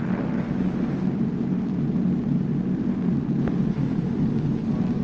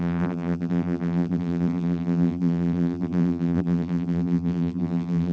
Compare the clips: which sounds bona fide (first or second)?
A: first